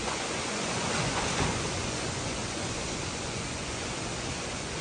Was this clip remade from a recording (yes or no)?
yes